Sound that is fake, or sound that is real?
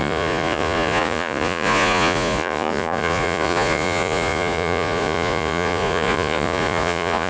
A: fake